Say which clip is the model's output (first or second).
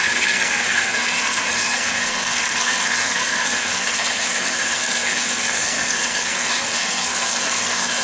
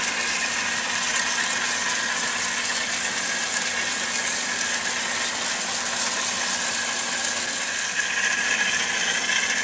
first